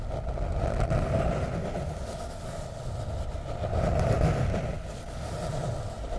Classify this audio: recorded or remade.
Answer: recorded